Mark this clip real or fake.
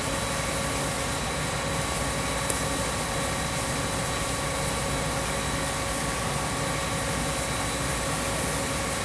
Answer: real